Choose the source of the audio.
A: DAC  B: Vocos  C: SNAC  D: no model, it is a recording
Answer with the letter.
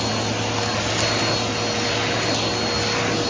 D